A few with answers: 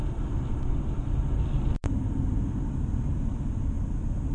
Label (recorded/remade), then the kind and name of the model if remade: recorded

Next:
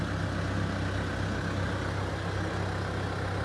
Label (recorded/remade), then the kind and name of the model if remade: recorded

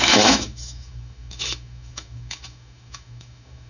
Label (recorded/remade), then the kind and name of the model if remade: remade, autoencoder, DAC-VAE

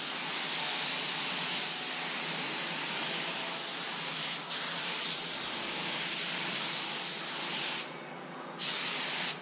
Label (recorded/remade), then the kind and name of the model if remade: recorded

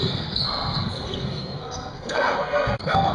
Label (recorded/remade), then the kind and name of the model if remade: remade, codec, SNAC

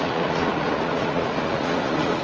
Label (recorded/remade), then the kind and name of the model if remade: remade, vocoder, Vocos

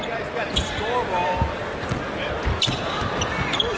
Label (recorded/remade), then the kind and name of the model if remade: recorded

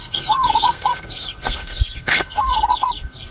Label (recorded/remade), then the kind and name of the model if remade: remade, codec, SNAC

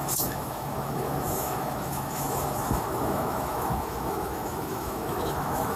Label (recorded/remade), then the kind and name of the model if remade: remade, autoencoder, DAC-VAE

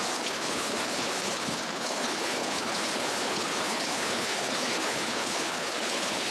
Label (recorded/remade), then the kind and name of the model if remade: remade, codec, HILCodec